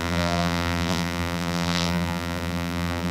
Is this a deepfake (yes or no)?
yes